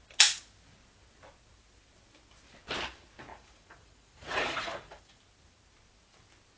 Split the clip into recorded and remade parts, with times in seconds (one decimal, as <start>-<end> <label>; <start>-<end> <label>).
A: 0.0-3.3 recorded; 3.3-5.2 remade; 5.2-6.6 recorded